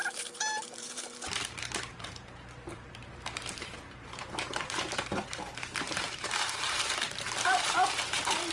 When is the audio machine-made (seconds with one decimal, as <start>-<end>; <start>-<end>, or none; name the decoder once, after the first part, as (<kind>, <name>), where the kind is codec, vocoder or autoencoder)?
0.0-8.5 (vocoder, BigVGAN v2)